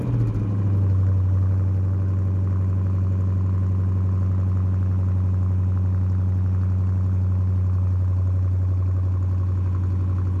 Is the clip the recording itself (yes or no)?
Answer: yes